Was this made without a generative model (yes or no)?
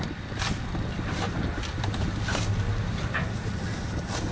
yes